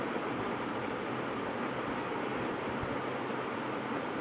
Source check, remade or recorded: recorded